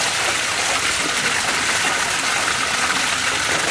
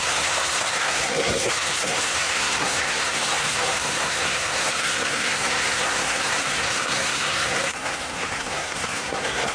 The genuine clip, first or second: first